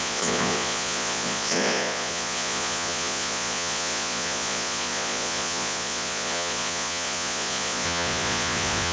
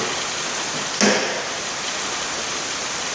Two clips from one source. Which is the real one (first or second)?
second